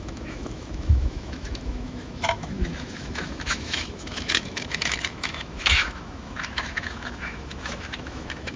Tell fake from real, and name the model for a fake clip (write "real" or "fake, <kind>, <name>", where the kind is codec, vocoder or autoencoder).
fake, autoencoder, DAC-VAE